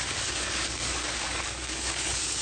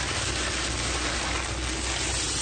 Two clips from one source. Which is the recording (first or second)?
second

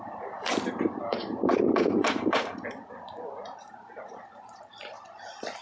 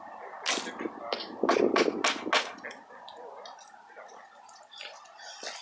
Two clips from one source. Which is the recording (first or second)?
second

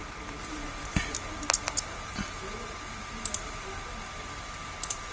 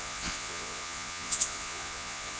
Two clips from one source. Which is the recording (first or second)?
first